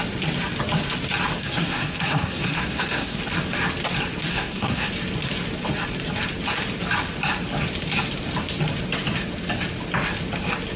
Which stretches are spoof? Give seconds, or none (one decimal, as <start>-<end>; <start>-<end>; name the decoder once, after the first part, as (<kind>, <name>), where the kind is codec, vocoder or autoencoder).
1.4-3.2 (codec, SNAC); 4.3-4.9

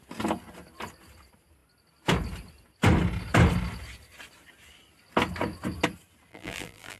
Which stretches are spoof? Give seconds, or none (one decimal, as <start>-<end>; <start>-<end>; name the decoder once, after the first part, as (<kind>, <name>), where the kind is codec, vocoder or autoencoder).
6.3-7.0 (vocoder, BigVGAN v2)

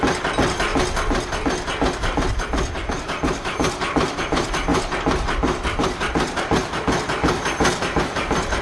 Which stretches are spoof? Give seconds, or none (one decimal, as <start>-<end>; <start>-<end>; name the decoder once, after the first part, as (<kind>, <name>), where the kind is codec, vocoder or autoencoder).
0.0-0.7 (vocoder, BigVGAN v2); 2.9-8.6

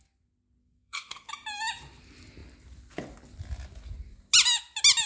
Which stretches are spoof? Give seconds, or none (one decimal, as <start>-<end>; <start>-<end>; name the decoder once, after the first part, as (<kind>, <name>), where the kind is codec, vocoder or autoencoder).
0.6-1.3 (codec, SNAC)